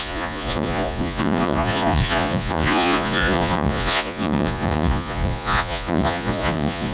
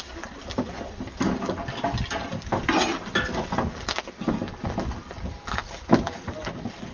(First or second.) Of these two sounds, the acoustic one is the second